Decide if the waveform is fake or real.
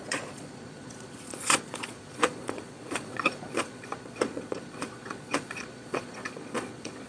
fake